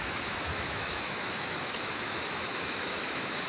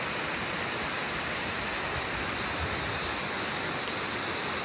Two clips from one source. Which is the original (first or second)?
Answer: second